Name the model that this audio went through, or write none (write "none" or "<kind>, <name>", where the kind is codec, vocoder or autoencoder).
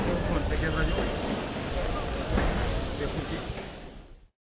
none